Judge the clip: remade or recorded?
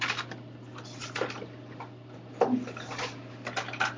recorded